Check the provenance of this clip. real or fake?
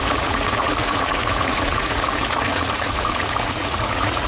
fake